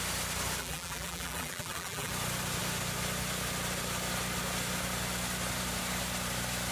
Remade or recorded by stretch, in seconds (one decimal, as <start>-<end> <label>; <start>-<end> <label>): 0.0-0.6 recorded; 0.6-2.1 remade; 2.1-6.7 recorded